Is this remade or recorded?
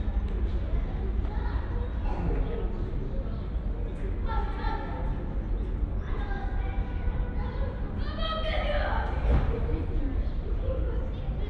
recorded